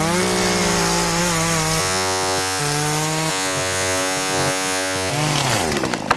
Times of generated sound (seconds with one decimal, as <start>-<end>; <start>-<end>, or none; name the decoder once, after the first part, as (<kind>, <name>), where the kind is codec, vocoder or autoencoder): 1.8-2.6 (vocoder, Vocos); 3.3-5.1